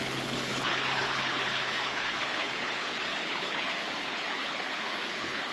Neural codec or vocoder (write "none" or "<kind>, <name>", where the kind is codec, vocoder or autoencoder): codec, HILCodec